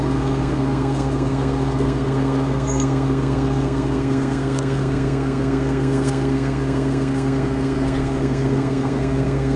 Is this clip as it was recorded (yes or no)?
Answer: no